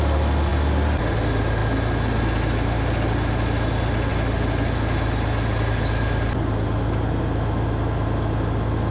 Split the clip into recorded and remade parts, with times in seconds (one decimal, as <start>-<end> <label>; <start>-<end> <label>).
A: 0.0-8.9 recorded